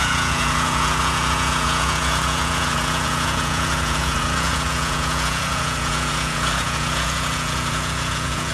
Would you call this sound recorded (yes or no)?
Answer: no